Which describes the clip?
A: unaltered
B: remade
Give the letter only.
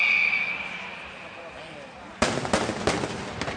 A